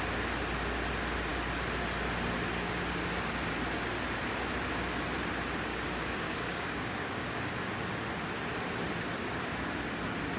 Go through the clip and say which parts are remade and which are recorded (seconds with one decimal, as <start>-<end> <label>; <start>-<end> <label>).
0.0-5.7 recorded; 5.7-7.4 remade; 7.4-10.4 recorded